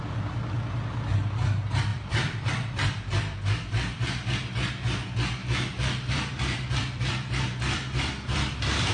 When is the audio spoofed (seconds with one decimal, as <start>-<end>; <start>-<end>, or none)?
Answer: 1.9-4.3; 5.4-8.9